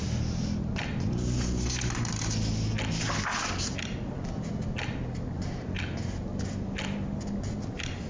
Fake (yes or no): no